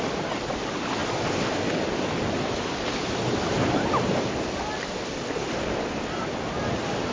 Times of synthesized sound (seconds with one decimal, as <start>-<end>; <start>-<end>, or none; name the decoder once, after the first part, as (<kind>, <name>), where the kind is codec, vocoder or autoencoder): none